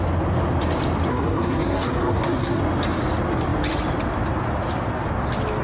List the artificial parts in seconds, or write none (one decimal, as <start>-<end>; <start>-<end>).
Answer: 1.1-2.6